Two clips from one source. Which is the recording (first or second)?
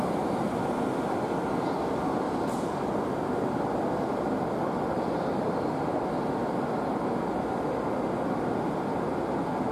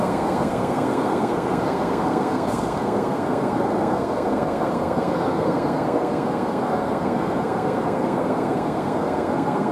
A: first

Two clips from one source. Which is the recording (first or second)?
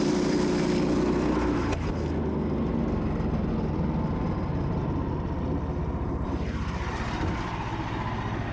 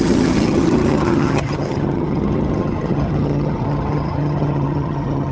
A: first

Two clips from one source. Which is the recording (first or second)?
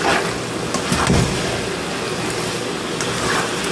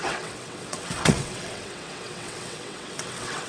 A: first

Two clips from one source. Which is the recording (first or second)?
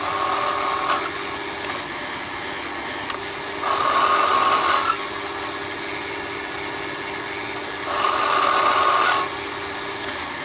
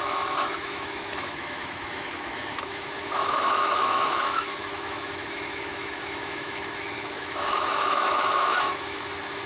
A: first